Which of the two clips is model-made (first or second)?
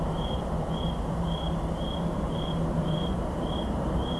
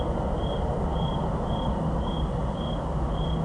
first